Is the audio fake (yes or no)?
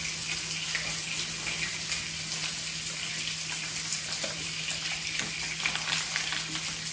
no